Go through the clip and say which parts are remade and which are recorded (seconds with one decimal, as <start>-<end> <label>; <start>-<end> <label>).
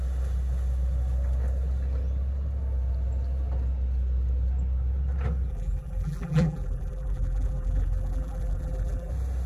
0.0-5.5 recorded; 5.5-9.1 remade; 9.1-9.5 recorded